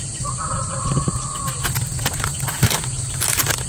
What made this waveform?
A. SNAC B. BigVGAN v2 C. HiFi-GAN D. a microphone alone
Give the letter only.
D